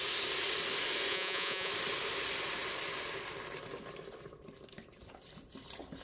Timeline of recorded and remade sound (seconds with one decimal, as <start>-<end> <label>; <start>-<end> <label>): 0.0-1.1 recorded; 1.1-1.7 remade; 1.7-6.0 recorded